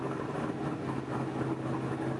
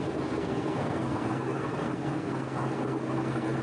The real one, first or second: first